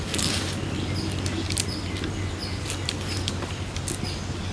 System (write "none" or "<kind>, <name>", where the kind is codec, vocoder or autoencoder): none